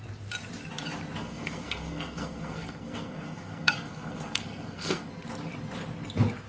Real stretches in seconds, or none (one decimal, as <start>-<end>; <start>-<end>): 0.0-1.2; 5.1-6.5